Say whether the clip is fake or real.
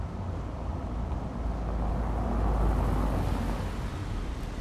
real